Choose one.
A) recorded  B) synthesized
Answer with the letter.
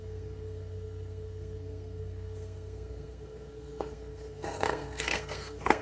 B